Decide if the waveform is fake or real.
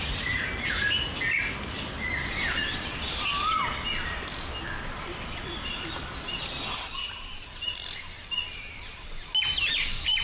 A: real